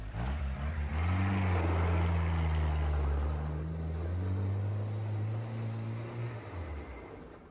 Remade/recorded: recorded